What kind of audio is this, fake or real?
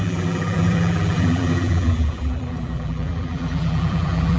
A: fake